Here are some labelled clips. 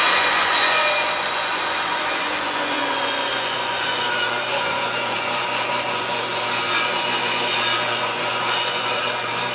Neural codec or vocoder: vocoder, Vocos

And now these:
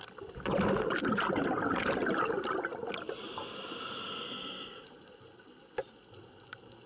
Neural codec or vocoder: none